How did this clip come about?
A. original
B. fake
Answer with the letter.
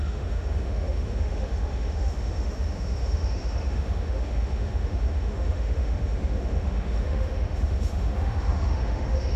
B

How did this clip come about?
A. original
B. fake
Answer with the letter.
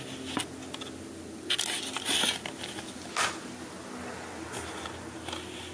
A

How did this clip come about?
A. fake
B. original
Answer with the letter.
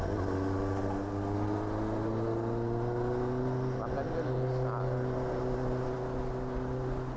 B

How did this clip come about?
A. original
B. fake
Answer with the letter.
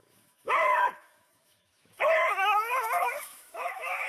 B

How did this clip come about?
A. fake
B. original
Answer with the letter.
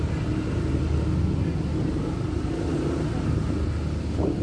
B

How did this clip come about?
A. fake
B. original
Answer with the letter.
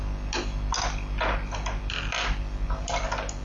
B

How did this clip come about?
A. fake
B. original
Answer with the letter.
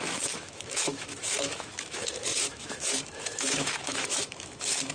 A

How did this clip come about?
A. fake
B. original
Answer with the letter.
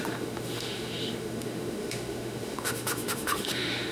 A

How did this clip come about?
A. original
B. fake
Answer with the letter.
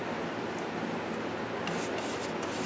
A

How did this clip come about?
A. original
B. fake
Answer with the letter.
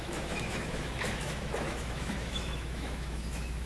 B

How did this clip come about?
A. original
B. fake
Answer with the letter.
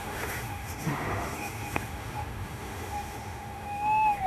B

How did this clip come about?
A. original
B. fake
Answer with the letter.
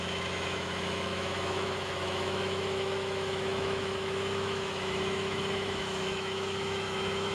B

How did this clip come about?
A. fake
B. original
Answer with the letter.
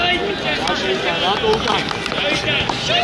B